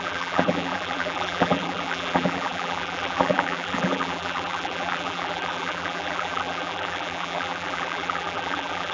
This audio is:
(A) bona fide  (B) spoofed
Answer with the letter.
B